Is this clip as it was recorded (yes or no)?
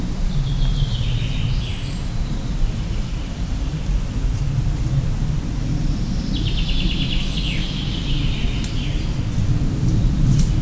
yes